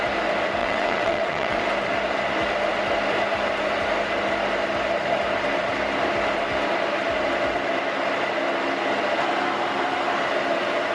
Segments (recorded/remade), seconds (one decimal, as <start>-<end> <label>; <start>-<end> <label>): 0.0-0.6 recorded; 0.6-1.6 remade; 1.6-10.9 recorded

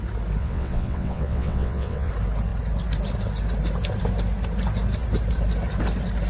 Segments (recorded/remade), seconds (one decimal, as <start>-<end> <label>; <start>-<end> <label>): 0.0-0.4 recorded; 0.4-2.1 remade; 2.1-6.3 recorded

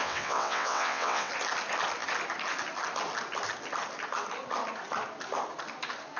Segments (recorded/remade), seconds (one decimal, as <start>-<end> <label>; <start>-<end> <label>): 0.0-1.3 remade; 1.3-6.2 recorded

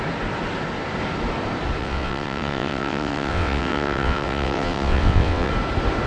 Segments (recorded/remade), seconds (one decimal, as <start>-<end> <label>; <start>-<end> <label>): 0.0-1.8 recorded; 1.8-5.5 remade; 5.5-6.1 recorded

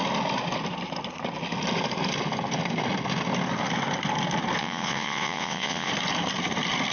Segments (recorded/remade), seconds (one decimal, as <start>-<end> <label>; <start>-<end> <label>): 0.0-4.6 recorded; 4.6-5.9 remade; 5.9-6.9 recorded

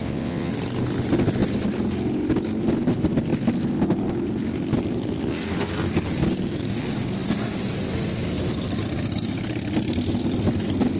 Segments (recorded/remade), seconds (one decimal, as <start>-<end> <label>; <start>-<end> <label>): 0.0-0.5 remade; 0.5-11.0 recorded

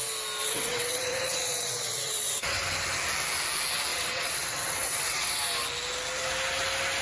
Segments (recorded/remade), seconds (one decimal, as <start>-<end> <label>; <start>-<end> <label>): 0.0-0.4 recorded; 0.4-2.6 remade; 2.6-3.9 recorded; 3.9-5.4 remade; 5.4-7.0 recorded

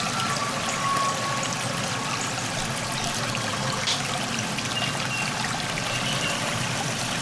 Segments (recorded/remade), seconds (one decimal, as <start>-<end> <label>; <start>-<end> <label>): 0.0-7.2 recorded